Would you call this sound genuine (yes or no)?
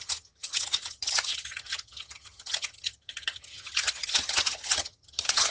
no